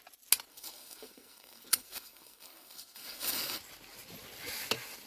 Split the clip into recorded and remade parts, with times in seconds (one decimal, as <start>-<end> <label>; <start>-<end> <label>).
0.0-0.5 recorded; 0.5-3.6 remade; 3.6-5.1 recorded